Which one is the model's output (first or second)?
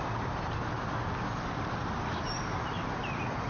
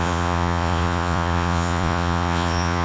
second